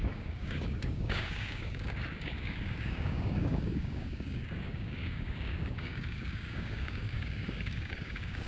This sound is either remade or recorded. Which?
remade